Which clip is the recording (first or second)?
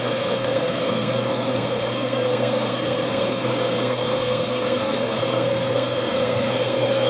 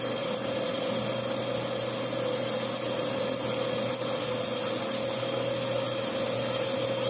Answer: second